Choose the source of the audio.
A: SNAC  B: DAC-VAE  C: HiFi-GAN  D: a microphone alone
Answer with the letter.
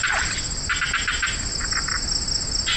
D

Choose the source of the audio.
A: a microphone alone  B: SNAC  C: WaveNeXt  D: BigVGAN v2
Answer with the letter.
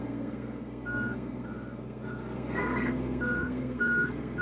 B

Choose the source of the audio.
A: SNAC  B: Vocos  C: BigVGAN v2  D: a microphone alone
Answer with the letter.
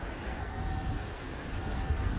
A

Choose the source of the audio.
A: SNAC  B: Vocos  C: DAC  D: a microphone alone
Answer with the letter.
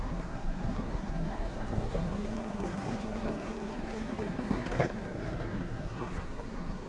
A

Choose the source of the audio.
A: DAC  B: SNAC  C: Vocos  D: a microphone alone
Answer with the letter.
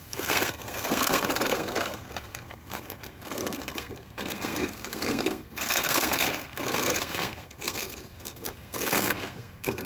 B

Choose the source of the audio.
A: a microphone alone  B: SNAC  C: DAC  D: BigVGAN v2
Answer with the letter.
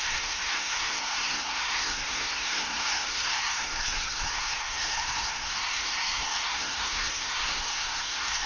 B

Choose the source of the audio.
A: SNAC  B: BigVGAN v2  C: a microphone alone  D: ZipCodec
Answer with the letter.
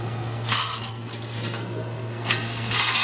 A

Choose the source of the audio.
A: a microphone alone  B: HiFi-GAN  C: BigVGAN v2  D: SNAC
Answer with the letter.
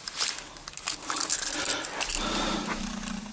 A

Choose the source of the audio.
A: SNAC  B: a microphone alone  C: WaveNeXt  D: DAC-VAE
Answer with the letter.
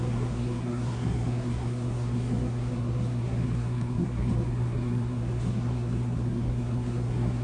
A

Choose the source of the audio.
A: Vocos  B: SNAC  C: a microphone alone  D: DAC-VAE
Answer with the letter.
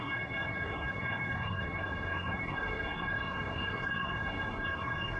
B